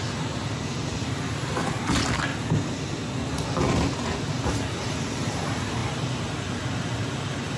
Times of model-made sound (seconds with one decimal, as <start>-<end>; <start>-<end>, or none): 0.0-2.3; 4.2-5.8; 6.5-7.6